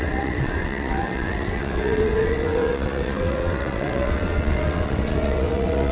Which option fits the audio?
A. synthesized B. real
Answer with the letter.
A